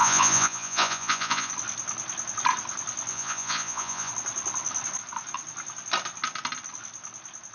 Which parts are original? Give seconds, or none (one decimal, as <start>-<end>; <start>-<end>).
1.5-3.1; 4.1-7.5